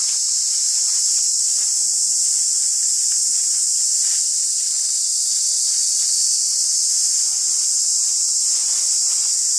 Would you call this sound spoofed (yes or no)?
no